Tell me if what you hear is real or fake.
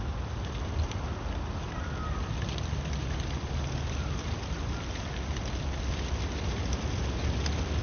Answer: real